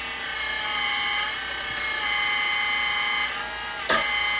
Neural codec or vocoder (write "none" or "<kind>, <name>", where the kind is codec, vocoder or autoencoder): none